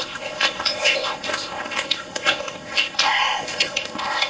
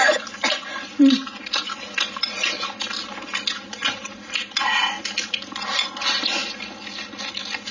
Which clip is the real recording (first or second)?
second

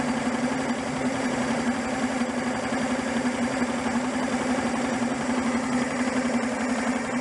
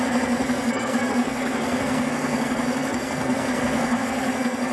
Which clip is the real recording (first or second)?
first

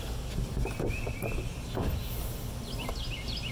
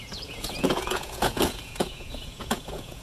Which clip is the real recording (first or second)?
first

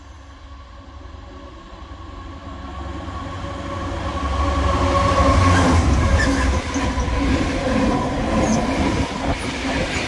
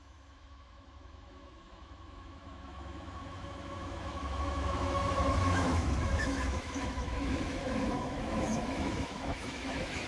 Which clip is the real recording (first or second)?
first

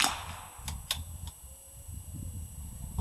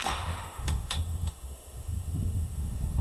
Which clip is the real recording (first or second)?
first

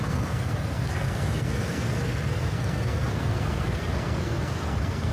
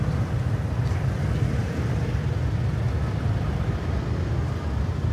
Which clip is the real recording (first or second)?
second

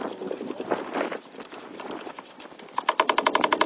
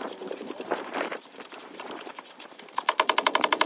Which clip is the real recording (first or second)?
first